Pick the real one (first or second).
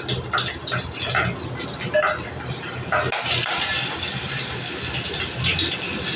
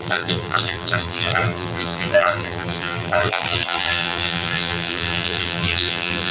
first